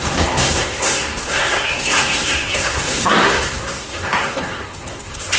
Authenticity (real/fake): fake